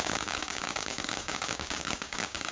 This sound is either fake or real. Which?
fake